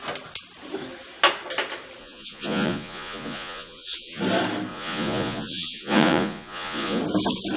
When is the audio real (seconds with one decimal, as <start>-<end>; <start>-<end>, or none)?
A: 0.0-2.0; 4.2-4.7; 7.0-7.6